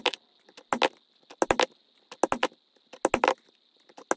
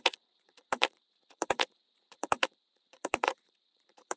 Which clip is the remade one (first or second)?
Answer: second